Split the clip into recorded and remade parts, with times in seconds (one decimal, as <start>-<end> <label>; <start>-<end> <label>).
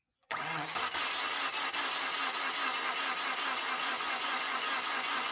0.0-0.7 remade; 0.7-3.8 recorded; 3.8-5.3 remade